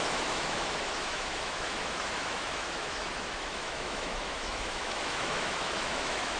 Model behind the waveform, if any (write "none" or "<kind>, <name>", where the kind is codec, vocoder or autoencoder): autoencoder, DAC-VAE